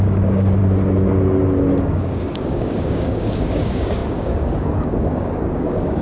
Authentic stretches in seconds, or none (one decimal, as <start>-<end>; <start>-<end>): 0.6-1.8